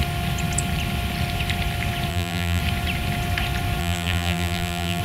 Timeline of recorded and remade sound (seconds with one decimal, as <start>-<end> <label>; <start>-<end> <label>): 0.0-2.1 recorded; 2.1-2.6 remade; 2.6-3.8 recorded; 3.8-5.0 remade